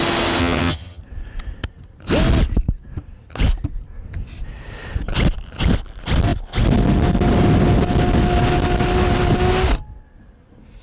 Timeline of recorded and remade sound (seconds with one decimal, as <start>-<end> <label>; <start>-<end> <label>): 0.0-0.4 recorded; 0.4-1.0 remade; 1.0-10.8 recorded